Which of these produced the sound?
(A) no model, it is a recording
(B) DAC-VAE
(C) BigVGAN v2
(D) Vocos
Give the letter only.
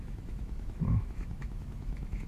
B